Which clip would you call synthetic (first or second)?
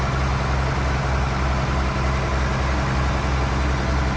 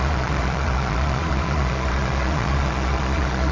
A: second